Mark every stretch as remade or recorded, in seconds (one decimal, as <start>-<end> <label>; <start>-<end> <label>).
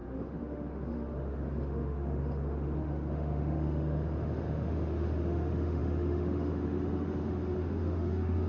0.0-8.5 remade